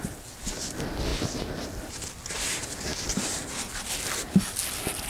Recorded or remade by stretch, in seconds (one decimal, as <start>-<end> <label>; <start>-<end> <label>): 0.0-5.1 recorded